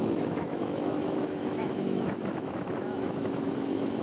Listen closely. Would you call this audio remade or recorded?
remade